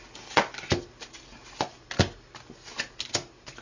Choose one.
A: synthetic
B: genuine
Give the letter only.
B